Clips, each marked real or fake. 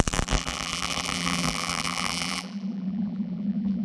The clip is fake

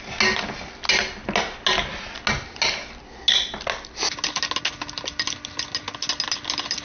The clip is real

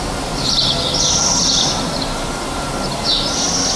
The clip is real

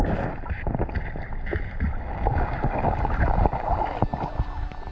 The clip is real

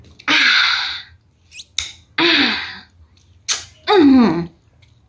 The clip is real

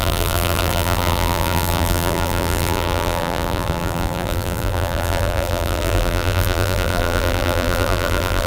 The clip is fake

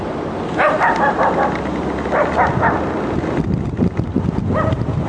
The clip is fake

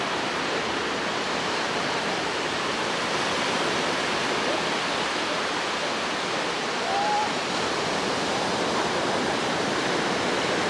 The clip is fake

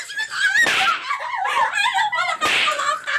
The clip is fake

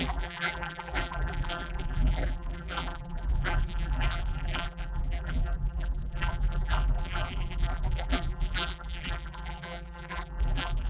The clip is fake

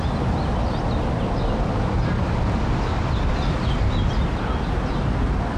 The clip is real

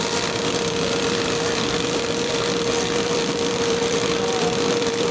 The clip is fake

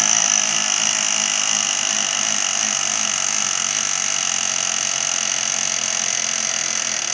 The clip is real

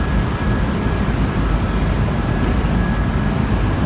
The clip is real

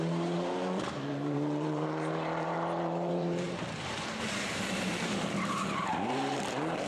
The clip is fake